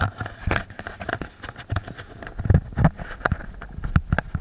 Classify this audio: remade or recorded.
recorded